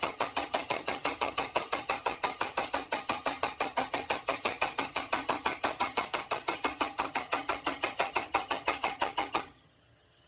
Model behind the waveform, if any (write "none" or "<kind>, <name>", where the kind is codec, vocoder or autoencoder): vocoder, HiFi-GAN